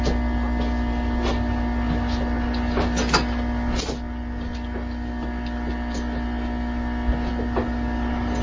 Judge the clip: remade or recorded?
recorded